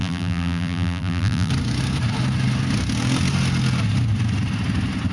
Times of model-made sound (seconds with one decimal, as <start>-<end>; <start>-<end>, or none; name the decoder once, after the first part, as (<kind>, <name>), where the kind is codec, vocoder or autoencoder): 0.0-1.5 (vocoder, BigVGAN v2)